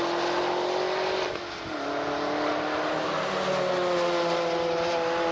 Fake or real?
real